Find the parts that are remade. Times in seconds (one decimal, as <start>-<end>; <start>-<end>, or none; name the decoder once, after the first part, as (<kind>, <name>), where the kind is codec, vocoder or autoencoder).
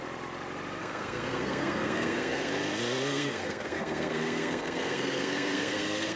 0.8-2.5 (codec, SNAC); 3.1-6.2